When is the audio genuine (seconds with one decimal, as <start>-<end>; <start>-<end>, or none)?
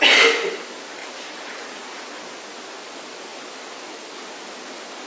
0.0-1.0; 2.0-5.1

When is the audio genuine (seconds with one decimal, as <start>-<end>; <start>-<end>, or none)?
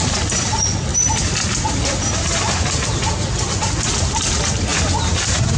0.0-5.6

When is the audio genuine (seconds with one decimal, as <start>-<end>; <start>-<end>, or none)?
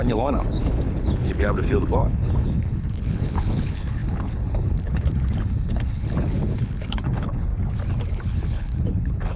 7.5-8.1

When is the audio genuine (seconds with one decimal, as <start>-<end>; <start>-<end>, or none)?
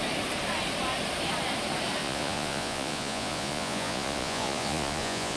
0.0-2.0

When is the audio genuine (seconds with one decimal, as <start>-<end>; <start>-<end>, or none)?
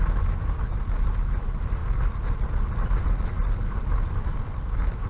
1.8-5.1